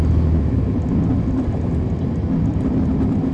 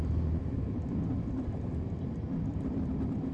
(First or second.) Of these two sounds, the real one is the first